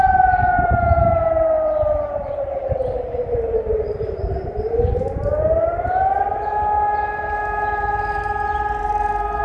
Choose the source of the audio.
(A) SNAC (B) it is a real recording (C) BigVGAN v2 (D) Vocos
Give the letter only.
C